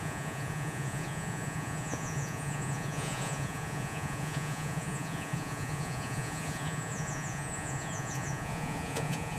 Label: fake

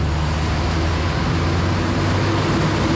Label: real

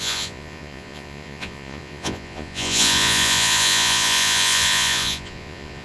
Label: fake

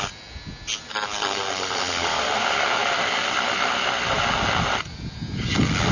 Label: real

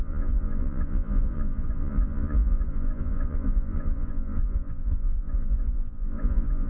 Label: fake